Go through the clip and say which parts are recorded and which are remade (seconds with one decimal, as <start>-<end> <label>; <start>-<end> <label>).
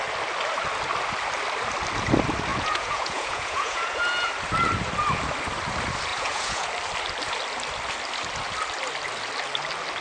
0.0-2.5 recorded; 2.5-4.3 remade; 4.3-6.1 recorded; 6.1-6.7 remade; 6.7-10.0 recorded